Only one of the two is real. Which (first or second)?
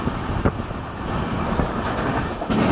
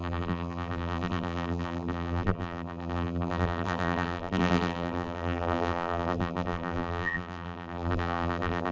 first